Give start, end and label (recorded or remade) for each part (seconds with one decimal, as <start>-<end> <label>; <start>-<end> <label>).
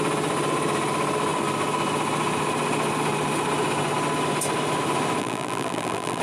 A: 0.0-5.2 recorded; 5.2-6.2 remade